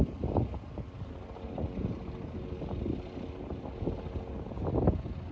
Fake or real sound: real